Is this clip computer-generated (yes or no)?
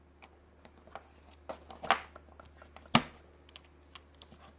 no